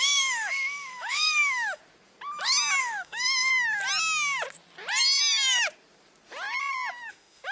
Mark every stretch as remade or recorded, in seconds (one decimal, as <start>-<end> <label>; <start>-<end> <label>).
0.0-1.8 remade; 1.8-2.8 recorded; 2.8-3.5 remade; 3.5-7.1 recorded; 7.1-7.5 remade